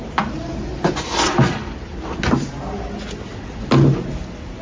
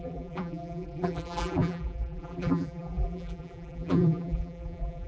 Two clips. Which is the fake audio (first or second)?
second